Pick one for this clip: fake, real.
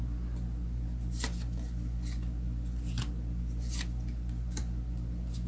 real